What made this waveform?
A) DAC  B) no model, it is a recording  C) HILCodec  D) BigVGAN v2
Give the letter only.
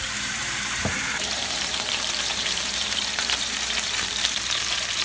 D